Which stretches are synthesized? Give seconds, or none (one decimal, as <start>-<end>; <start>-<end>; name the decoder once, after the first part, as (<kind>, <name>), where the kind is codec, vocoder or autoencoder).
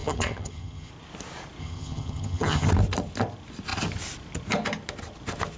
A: 0.0-0.9 (vocoder, HiFi-GAN); 1.6-2.7